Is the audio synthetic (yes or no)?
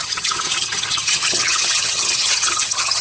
yes